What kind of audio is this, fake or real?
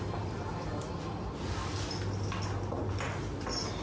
real